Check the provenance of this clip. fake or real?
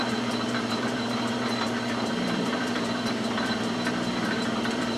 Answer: fake